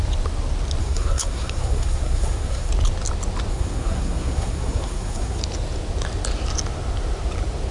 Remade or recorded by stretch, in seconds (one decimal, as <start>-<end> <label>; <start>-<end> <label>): 0.0-0.8 recorded; 0.8-2.7 remade; 2.7-3.5 recorded; 3.5-5.4 remade; 5.4-7.7 recorded